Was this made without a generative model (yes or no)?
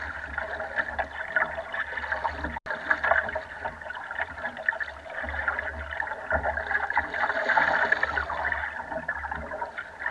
yes